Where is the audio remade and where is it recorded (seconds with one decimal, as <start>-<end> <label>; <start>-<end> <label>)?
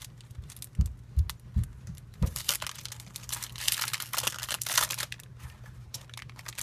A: 0.0-1.7 recorded; 1.7-2.4 remade; 2.4-5.3 recorded; 5.3-6.0 remade; 6.0-6.6 recorded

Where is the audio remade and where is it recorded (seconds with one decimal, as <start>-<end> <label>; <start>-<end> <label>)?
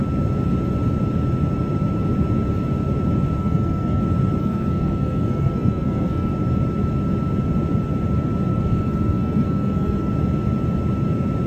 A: 0.0-3.4 recorded; 3.4-4.0 remade; 4.0-4.4 recorded; 4.4-6.3 remade; 6.3-8.5 recorded; 8.5-10.1 remade; 10.1-11.5 recorded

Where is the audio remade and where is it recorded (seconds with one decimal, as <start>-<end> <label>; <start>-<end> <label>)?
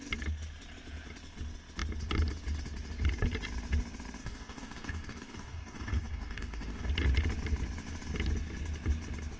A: 0.0-4.2 recorded; 4.2-6.9 remade; 6.9-9.4 recorded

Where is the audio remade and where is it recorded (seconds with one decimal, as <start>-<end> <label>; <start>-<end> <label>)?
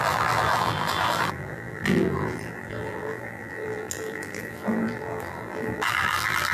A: 0.0-6.5 remade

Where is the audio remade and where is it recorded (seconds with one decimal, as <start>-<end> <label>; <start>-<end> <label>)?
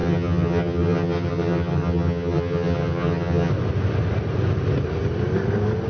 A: 0.0-3.5 remade; 3.5-5.9 recorded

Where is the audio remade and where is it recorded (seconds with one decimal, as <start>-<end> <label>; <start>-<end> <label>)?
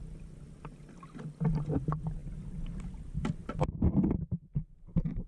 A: 0.0-5.3 recorded